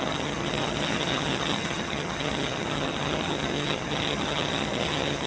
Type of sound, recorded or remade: remade